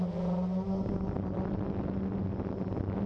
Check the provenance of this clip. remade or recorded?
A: recorded